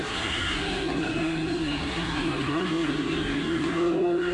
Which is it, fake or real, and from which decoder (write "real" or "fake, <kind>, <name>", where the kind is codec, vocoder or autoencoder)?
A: fake, codec, SNAC